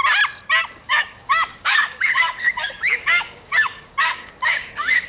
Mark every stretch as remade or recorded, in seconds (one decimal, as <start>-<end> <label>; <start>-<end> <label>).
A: 0.0-0.8 recorded; 0.8-5.1 remade